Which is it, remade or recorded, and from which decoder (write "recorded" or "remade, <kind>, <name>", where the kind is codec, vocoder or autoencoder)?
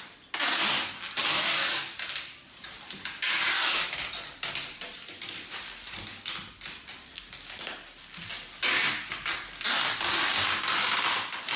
recorded